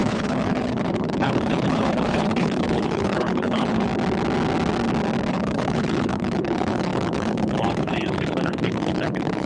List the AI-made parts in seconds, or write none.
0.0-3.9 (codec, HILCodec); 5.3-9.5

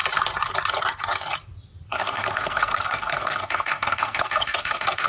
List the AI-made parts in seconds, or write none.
1.9-5.1 (codec, SNAC)

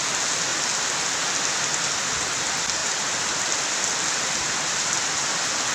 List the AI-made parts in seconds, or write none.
2.8-3.9 (vocoder, BigVGAN v2)

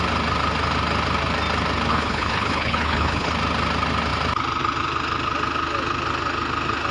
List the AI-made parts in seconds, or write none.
1.9-3.3 (codec, HILCodec)

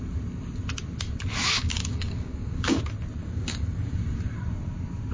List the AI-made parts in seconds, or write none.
1.4-2.8 (codec, DAC); 3.2-3.9

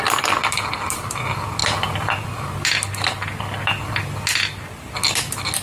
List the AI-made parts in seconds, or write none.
none